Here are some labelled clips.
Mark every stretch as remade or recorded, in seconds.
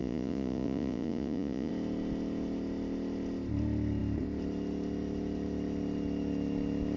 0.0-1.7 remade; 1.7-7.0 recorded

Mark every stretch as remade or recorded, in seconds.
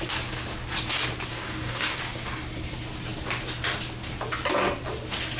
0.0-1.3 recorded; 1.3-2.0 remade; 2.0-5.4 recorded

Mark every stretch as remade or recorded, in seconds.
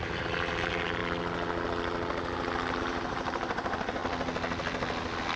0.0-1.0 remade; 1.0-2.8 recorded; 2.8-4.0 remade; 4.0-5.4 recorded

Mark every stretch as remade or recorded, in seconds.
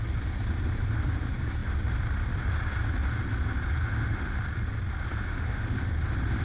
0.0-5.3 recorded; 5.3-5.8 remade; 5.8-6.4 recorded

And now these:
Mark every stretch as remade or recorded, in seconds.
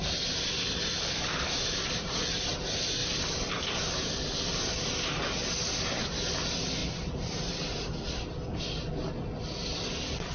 0.0-0.8 recorded; 0.8-2.5 remade; 2.5-3.0 recorded; 3.0-3.5 remade; 3.5-6.8 recorded; 6.8-8.6 remade; 8.6-10.3 recorded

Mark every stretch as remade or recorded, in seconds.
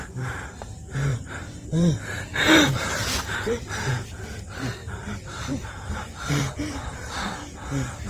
0.0-1.1 recorded; 1.1-3.9 remade; 3.9-4.8 recorded; 4.8-7.3 remade; 7.3-8.1 recorded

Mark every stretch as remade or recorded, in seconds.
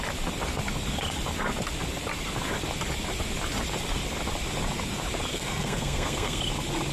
0.0-5.3 recorded; 5.3-6.4 remade; 6.4-6.9 recorded